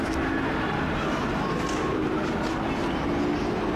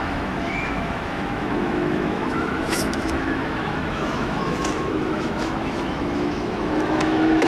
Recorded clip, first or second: first